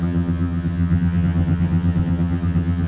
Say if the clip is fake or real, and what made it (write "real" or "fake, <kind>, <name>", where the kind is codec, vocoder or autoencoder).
fake, vocoder, HiFi-GAN